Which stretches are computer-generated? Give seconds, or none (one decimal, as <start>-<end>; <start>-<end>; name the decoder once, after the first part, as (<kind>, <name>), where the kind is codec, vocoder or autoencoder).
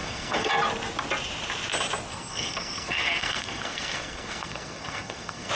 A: 0.0-0.5 (codec, SNAC); 2.1-5.5